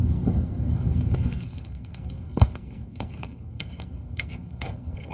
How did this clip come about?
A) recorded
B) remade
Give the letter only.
B